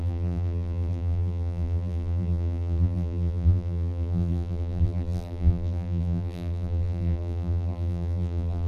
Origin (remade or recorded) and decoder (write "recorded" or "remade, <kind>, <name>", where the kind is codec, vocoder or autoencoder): remade, vocoder, BigVGAN v2